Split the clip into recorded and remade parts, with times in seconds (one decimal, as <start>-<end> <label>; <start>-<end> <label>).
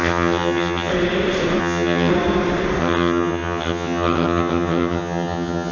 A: 0.0-0.9 remade; 0.9-1.6 recorded; 1.6-2.1 remade; 2.1-2.8 recorded; 2.8-5.7 remade